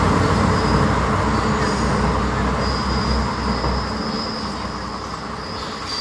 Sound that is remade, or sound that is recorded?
recorded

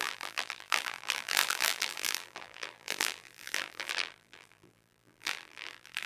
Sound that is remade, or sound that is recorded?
remade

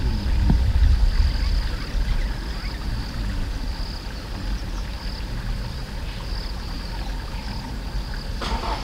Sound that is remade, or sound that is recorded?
recorded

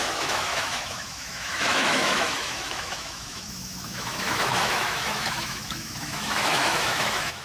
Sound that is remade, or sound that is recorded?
remade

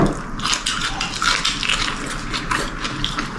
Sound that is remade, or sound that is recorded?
recorded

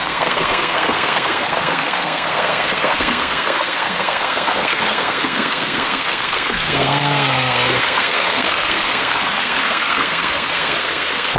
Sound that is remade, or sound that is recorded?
remade